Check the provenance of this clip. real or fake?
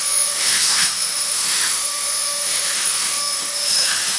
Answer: fake